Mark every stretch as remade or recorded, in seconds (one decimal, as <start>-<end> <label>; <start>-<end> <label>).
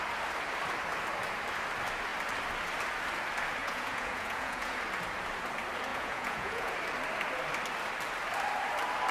0.0-3.6 recorded; 3.6-4.7 remade; 4.7-5.9 recorded; 5.9-6.7 remade; 6.7-9.1 recorded